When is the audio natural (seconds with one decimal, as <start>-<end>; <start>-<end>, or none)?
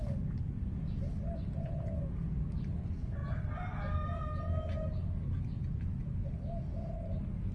0.8-7.5